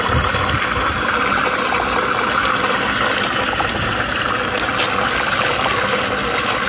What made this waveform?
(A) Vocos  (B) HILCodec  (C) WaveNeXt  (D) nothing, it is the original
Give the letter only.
D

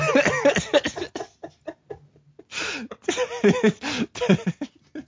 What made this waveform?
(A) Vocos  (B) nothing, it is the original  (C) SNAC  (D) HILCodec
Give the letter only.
B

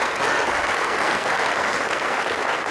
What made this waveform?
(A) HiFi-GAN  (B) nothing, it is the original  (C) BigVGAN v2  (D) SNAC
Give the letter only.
D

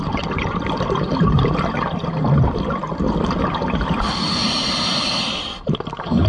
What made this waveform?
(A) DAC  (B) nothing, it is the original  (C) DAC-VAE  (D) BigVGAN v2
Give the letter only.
B